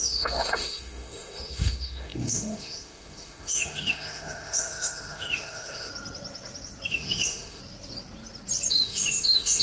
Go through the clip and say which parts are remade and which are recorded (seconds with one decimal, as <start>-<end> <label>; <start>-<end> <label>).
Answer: 0.0-5.9 remade; 5.9-6.9 recorded; 6.9-7.6 remade; 7.6-8.7 recorded; 8.7-9.6 remade